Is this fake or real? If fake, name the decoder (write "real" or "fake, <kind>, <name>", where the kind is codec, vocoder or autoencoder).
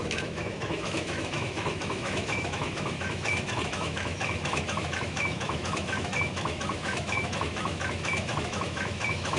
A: fake, autoencoder, DAC-VAE